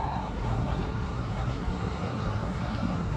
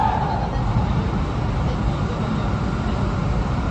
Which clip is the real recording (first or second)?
second